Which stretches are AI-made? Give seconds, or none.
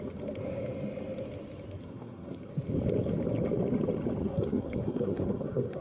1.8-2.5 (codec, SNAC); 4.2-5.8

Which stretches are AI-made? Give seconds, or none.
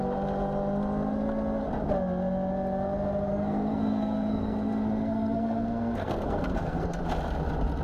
3.3-7.0 (codec, SNAC)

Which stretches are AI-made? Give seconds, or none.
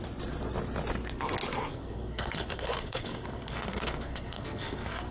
1.7-5.1 (codec, SNAC)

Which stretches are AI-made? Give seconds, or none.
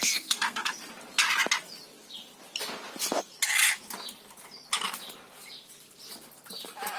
0.0-0.7 (codec, SNAC)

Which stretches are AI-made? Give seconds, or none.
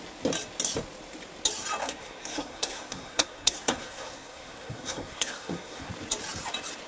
1.8-5.9 (codec, SNAC)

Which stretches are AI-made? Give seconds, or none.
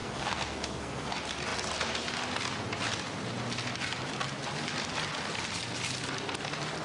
0.0-1.1 (codec, SNAC)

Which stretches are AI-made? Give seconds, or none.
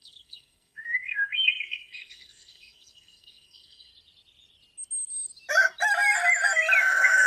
0.0-3.9 (codec, SNAC); 6.8-7.3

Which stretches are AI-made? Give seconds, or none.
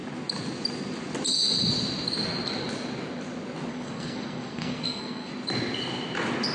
3.7-5.3 (codec, SNAC)